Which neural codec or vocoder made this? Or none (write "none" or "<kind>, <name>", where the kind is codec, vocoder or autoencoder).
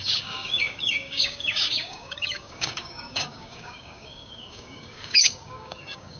codec, DAC